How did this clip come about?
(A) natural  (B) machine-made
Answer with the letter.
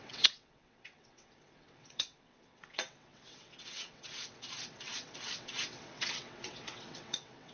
B